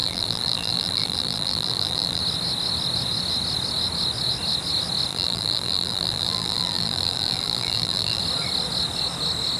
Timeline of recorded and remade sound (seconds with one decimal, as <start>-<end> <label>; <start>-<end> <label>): 0.0-2.2 remade; 2.2-5.1 recorded; 5.1-8.2 remade; 8.2-9.6 recorded